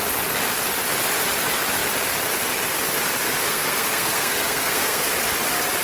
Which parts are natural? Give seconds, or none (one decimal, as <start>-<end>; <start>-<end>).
0.0-3.5; 5.1-5.8